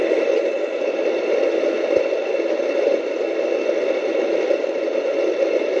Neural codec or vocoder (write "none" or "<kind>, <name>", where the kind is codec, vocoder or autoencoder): none